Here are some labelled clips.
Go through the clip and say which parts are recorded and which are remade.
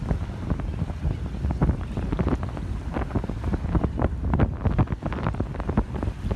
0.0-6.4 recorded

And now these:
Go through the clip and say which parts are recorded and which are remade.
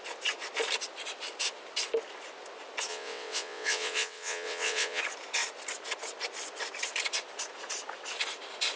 0.0-2.9 recorded; 2.9-5.0 remade; 5.0-8.8 recorded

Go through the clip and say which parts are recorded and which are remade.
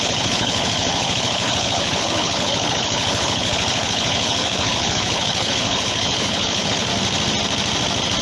0.0-6.9 remade; 6.9-8.2 recorded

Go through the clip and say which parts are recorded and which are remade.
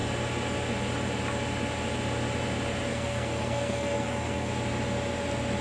0.0-2.9 recorded; 2.9-4.5 remade; 4.5-5.6 recorded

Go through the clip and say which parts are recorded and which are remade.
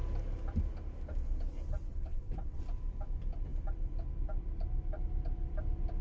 0.0-1.9 recorded; 1.9-2.6 remade; 2.6-6.0 recorded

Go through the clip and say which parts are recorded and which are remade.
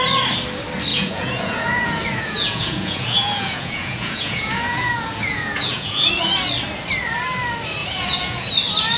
0.0-0.9 recorded; 0.9-6.1 remade; 6.1-7.8 recorded; 7.8-8.5 remade; 8.5-9.0 recorded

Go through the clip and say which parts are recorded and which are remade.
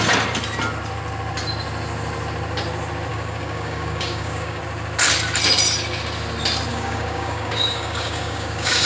0.0-3.1 recorded; 3.1-4.6 remade; 4.6-6.7 recorded; 6.7-8.9 remade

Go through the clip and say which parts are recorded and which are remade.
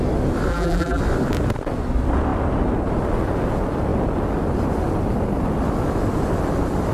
0.0-0.5 recorded; 0.5-1.0 remade; 1.0-6.9 recorded